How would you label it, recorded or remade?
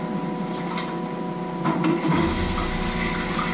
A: recorded